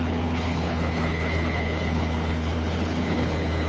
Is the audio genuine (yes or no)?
no